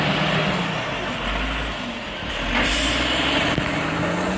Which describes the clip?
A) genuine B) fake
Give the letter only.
A